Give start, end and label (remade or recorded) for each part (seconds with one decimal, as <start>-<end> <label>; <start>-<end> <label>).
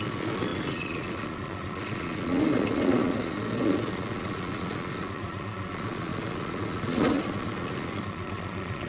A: 0.0-8.9 remade